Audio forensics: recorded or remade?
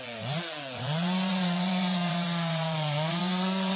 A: remade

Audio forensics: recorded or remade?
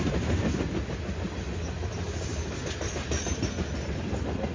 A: recorded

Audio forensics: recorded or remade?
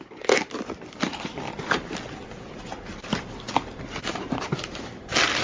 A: recorded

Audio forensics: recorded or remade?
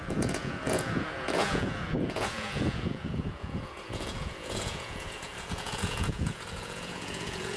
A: remade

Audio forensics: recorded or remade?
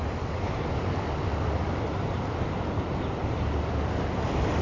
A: recorded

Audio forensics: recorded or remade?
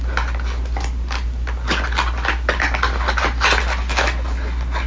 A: recorded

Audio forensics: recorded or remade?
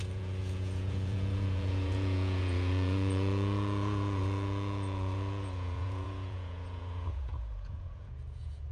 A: remade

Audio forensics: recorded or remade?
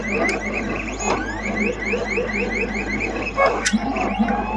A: recorded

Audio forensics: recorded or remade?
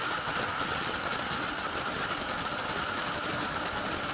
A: recorded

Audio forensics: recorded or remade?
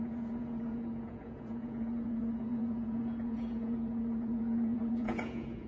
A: remade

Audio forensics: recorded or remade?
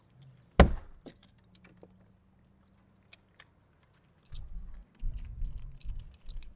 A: recorded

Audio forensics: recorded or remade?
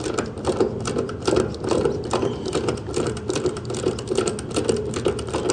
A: recorded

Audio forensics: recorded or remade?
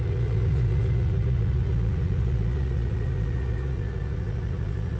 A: remade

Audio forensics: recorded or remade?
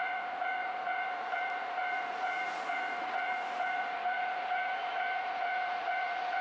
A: remade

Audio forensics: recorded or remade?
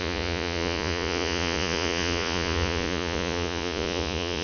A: remade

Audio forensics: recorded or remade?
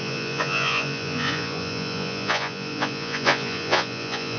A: remade